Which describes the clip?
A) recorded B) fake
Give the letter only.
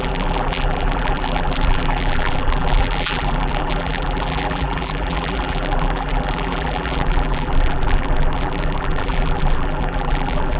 B